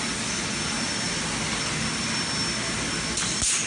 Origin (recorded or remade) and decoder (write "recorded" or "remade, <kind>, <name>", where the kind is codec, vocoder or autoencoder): recorded